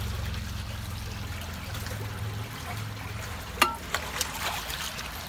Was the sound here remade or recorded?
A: recorded